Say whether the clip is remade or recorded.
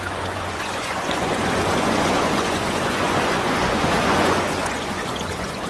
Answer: remade